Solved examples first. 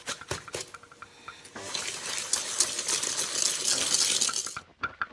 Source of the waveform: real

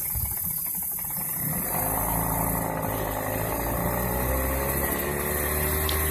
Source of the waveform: real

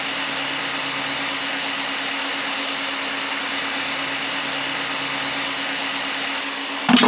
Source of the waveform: real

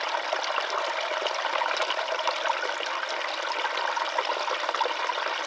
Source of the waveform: real